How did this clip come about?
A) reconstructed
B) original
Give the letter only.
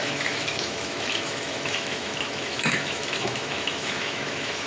A